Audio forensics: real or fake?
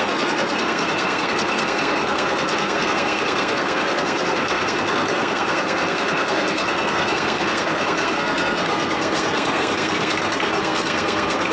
fake